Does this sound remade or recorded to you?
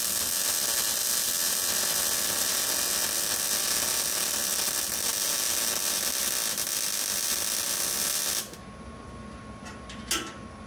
recorded